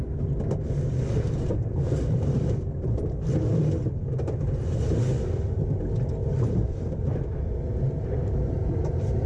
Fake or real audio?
real